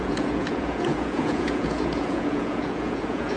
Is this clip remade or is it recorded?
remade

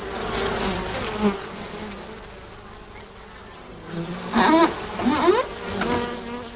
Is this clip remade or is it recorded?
recorded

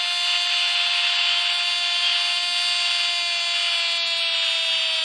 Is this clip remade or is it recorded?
recorded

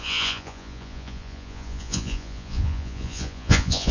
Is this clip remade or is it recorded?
remade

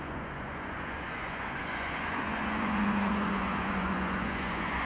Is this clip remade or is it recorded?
remade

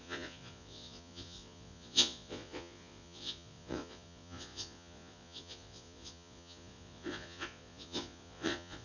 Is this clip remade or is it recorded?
remade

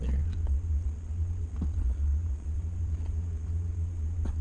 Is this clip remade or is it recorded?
remade